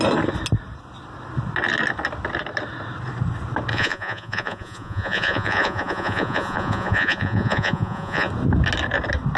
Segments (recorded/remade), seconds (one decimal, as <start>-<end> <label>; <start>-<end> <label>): 0.0-3.7 recorded; 3.7-8.3 remade; 8.3-9.4 recorded